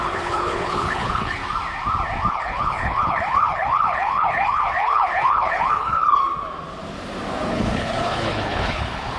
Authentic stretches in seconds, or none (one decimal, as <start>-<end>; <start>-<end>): 1.4-2.3; 6.2-7.5